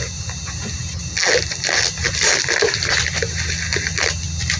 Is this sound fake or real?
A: real